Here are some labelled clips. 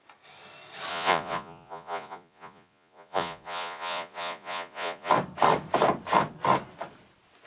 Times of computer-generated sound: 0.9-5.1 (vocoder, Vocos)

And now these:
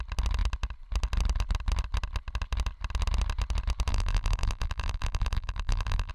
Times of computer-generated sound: 3.9-6.1 (vocoder, BigVGAN v2)